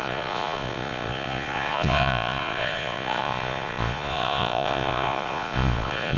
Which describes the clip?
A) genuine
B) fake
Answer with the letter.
B